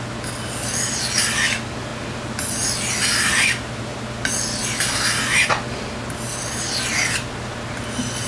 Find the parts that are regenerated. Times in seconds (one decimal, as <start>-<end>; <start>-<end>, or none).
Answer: none

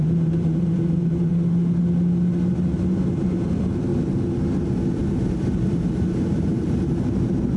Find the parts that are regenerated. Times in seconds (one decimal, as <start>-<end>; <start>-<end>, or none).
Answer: 0.0-1.3; 3.1-3.9; 5.1-7.6

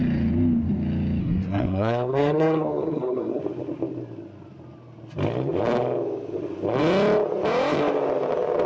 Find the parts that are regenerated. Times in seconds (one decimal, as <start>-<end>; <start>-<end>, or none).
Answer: 1.2-3.4

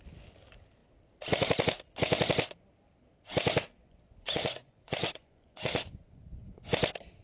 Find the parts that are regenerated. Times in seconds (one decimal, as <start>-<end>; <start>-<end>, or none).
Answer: 3.8-6.7

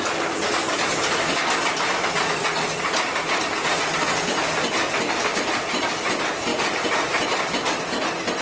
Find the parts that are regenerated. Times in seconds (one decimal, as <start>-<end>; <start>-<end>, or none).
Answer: none

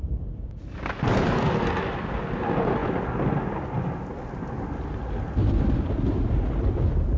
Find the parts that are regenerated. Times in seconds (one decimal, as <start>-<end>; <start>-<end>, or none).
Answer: none